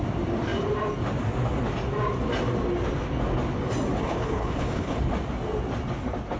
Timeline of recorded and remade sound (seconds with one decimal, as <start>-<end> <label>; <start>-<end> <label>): 0.0-4.0 recorded; 4.0-5.1 remade; 5.1-6.4 recorded